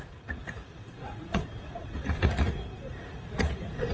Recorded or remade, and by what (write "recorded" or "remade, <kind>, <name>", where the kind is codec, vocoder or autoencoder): remade, vocoder, Vocos